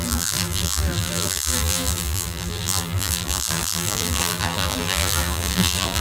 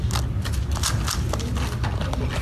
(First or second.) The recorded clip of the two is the second